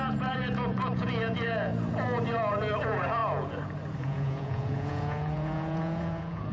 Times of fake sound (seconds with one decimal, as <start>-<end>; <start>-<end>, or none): 0.0-1.7; 2.8-3.2; 4.0-6.5